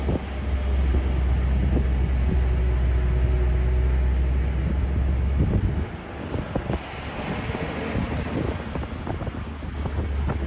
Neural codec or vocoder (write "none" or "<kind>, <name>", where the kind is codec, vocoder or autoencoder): none